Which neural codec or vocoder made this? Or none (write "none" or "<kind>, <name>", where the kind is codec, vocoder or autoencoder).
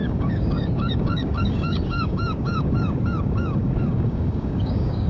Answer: codec, DAC